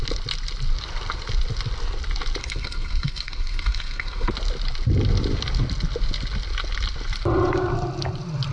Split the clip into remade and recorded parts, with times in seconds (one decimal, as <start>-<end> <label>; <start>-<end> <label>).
0.0-2.4 recorded; 2.4-4.3 remade; 4.3-8.5 recorded